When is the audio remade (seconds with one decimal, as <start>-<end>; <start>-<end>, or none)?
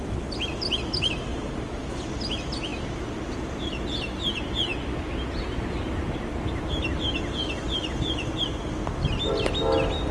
none